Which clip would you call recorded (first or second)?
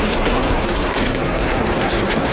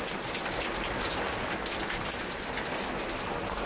second